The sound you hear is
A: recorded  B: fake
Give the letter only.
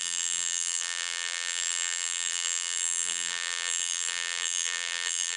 B